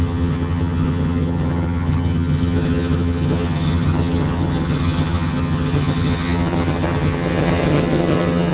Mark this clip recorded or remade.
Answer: remade